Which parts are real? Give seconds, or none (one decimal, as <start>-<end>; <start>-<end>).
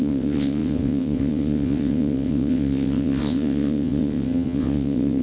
none